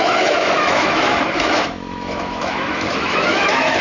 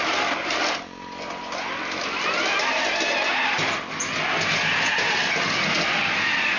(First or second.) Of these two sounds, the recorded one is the second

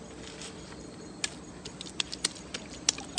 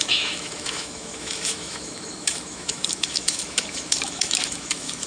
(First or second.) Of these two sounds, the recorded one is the first